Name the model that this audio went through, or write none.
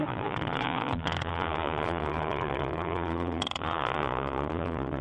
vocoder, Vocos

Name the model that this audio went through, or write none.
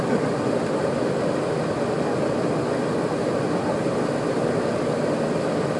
none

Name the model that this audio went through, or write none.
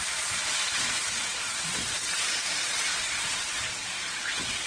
vocoder, Vocos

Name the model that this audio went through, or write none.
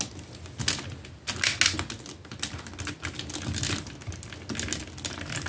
none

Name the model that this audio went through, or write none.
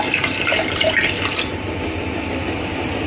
vocoder, BigVGAN v2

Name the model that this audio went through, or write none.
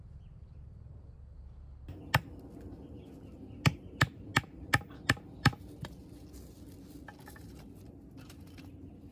none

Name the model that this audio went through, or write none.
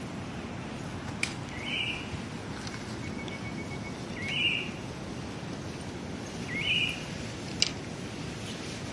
none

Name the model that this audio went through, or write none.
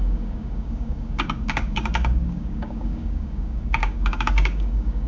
codec, DAC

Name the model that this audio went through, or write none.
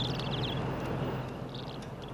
none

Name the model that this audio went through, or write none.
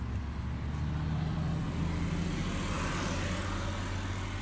none